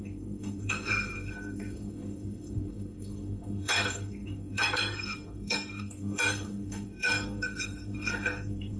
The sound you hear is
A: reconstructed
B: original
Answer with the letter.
A